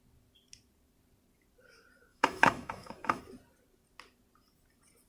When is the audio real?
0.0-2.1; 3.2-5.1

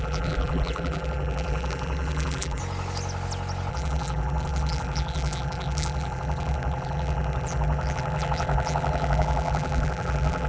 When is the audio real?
2.6-3.7

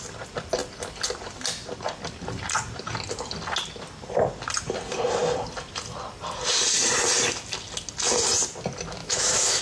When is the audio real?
0.0-9.0

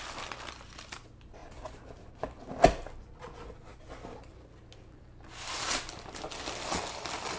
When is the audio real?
0.0-7.4

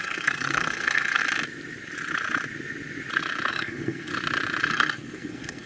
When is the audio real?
1.2-3.5; 4.1-4.7

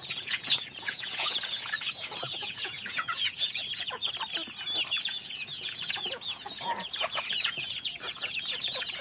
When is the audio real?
4.1-4.9